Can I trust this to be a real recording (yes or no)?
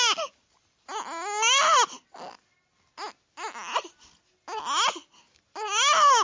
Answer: yes